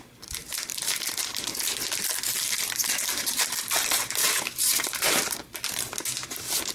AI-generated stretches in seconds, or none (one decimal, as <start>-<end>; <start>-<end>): 0.7-1.4; 4.2-5.4